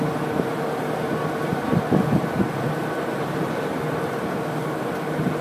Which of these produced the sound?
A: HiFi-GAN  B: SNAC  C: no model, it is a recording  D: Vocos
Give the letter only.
C